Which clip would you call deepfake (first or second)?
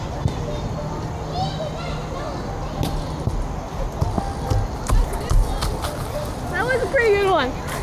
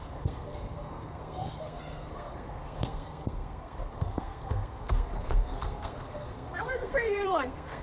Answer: second